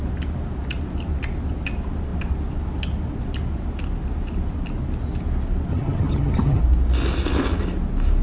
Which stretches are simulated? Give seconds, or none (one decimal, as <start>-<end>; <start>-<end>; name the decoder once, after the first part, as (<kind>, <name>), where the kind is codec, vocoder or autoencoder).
5.7-6.6 (vocoder, HiFi-GAN)